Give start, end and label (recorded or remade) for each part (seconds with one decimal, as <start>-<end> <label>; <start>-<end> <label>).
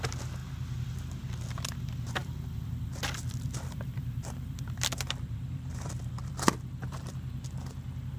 0.0-2.2 recorded; 2.2-7.1 remade; 7.1-8.2 recorded